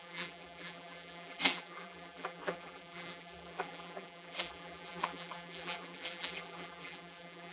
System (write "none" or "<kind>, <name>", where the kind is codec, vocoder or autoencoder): vocoder, BigVGAN v2